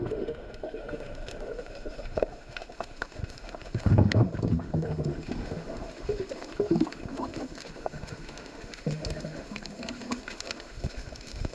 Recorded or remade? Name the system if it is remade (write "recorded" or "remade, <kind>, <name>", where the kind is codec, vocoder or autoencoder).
remade, autoencoder, DAC-VAE